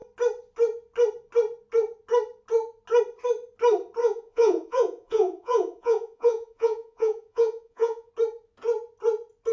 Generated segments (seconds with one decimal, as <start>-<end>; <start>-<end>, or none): 4.0-8.1